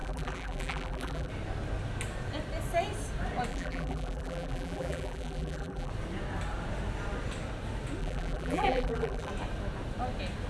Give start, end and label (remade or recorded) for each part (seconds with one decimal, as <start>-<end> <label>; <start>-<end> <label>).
0.0-1.3 remade; 1.3-3.5 recorded; 3.5-5.9 remade; 5.9-8.0 recorded; 8.0-9.3 remade; 9.3-10.5 recorded